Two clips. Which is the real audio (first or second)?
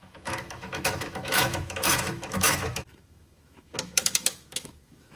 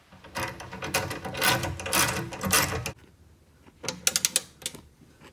second